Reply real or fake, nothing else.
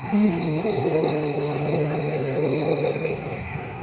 fake